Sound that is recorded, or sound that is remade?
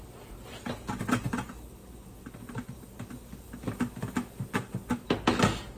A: recorded